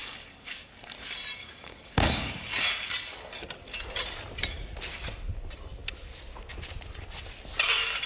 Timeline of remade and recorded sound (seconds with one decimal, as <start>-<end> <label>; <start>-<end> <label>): 0.0-0.7 remade; 0.7-1.4 recorded; 1.4-2.5 remade; 2.5-8.1 recorded